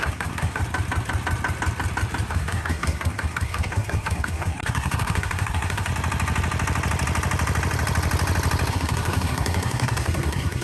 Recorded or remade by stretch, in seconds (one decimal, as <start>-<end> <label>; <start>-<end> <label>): 0.0-0.6 remade; 0.6-2.3 recorded; 2.3-5.9 remade; 5.9-8.7 recorded; 8.7-10.6 remade